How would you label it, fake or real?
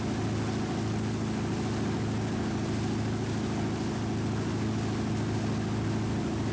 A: real